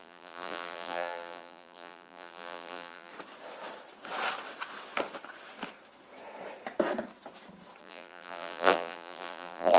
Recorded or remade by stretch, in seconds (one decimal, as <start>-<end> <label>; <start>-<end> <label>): 0.0-3.1 remade; 3.1-7.8 recorded; 7.8-9.8 remade